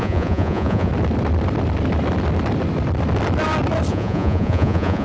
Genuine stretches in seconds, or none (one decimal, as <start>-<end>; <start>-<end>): 0.9-3.9